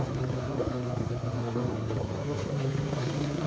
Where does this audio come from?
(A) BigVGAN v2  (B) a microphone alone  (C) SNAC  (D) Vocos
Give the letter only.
C